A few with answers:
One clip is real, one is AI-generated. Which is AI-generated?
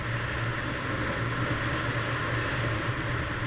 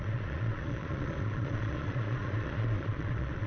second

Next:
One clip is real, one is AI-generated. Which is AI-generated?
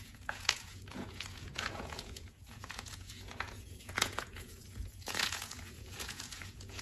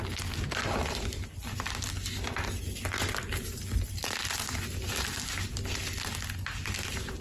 first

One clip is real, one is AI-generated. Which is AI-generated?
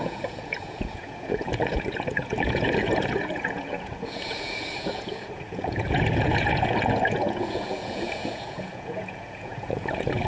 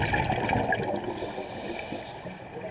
first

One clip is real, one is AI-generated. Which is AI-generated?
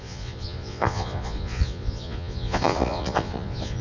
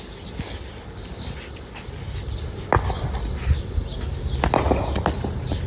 first